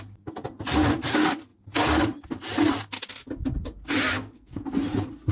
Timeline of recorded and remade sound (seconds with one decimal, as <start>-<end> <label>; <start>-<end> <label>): 0.0-4.1 recorded; 4.1-4.6 remade; 4.6-5.3 recorded